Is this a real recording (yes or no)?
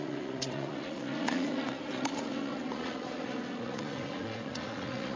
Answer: no